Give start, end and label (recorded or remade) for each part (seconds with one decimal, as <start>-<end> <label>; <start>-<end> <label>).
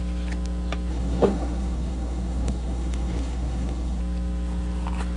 0.0-0.9 recorded; 0.9-4.0 remade; 4.0-5.2 recorded